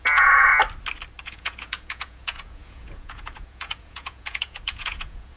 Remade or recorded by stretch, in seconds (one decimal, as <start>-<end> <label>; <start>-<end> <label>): 0.0-0.5 remade; 0.5-1.2 recorded; 1.2-5.4 remade